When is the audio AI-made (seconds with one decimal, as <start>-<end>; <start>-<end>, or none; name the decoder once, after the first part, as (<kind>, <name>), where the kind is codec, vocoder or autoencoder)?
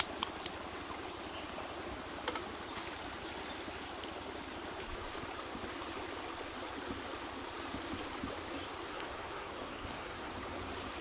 8.9-10.3 (codec, SNAC)